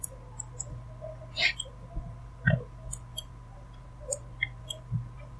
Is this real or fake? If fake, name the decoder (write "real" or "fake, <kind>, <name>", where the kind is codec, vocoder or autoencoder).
real